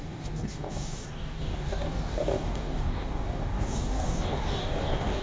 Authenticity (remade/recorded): remade